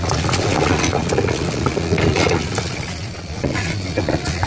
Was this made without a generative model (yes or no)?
no